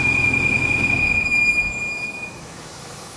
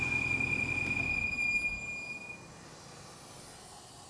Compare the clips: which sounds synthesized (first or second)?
first